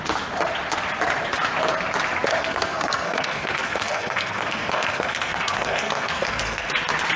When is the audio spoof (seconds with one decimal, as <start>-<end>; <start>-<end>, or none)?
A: 2.4-6.7